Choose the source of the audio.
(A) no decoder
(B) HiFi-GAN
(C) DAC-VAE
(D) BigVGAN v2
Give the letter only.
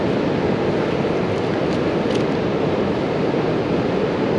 A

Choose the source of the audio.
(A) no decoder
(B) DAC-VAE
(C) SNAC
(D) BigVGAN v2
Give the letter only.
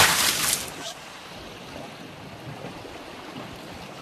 A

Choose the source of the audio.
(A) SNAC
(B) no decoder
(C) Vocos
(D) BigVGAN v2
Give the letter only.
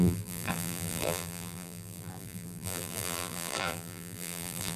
D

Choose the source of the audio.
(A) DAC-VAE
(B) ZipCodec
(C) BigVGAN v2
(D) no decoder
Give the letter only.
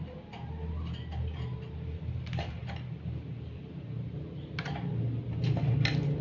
D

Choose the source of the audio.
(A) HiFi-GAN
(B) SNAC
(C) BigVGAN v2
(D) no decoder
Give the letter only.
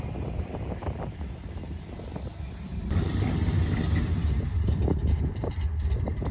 C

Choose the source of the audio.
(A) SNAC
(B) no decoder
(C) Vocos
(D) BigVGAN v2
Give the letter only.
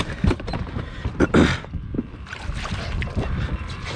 D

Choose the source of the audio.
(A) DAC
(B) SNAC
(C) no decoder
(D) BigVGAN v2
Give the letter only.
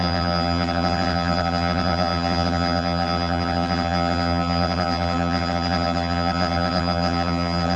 D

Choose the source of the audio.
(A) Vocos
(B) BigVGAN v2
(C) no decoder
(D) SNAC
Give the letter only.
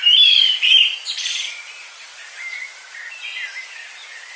B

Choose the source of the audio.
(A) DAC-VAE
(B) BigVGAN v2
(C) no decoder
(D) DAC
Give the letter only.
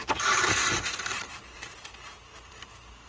B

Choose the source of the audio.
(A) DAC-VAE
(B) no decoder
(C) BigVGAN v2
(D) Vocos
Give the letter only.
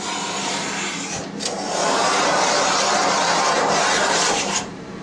C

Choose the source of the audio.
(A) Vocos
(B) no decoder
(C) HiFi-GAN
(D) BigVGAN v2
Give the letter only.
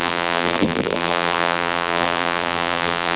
D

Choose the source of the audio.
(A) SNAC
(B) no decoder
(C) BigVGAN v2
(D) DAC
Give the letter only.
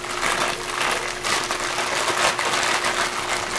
B